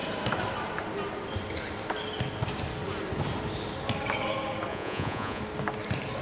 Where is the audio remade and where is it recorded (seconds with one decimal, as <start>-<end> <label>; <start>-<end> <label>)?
0.0-4.7 recorded; 4.7-5.4 remade; 5.4-6.2 recorded